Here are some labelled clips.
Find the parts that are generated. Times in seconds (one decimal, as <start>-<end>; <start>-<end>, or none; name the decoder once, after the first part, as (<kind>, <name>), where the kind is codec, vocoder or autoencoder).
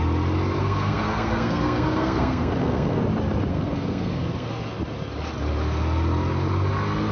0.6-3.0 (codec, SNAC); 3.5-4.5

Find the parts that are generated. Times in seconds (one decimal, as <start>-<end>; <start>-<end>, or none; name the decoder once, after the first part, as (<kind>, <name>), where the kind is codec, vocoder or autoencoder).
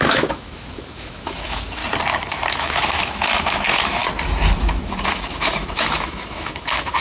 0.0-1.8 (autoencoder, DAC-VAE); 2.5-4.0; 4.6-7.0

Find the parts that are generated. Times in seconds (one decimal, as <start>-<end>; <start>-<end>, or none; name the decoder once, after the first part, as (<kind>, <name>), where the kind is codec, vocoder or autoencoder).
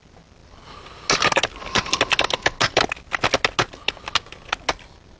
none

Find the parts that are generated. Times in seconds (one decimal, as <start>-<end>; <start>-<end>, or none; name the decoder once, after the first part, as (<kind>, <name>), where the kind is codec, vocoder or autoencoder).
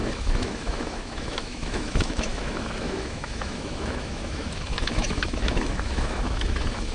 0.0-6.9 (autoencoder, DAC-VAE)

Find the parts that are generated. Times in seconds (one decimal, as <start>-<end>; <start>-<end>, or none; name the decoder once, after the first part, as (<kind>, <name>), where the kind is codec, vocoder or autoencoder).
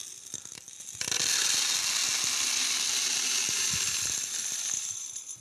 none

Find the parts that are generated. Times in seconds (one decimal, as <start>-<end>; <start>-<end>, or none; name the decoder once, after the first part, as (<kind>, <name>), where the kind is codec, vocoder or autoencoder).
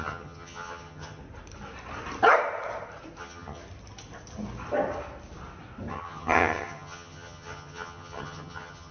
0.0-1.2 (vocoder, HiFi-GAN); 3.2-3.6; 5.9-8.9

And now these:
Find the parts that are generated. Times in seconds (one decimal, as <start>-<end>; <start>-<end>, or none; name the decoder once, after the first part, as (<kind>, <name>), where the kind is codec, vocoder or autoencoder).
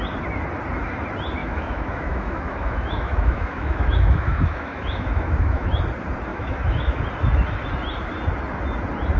1.4-5.8 (autoencoder, DAC-VAE); 6.3-7.0